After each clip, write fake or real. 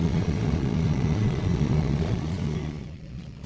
fake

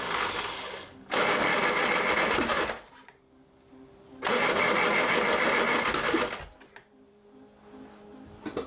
real